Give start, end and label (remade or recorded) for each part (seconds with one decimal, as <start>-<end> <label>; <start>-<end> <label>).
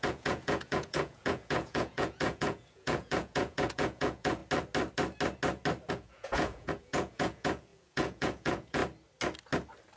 0.0-4.4 remade; 4.4-5.9 recorded; 5.9-8.8 remade; 8.8-10.0 recorded